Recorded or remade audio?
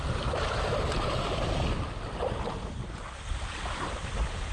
recorded